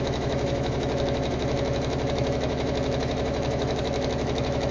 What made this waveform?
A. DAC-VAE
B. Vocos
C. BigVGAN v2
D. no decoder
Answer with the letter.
A